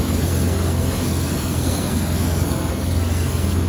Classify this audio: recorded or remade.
remade